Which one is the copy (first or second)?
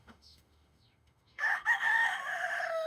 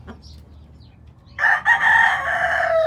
first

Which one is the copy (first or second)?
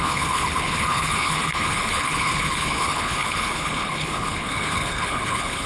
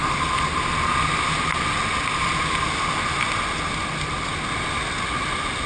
first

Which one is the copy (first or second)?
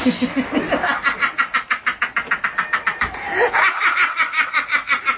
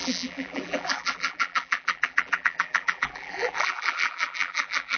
second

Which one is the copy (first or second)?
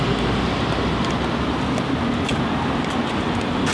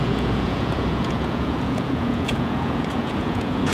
second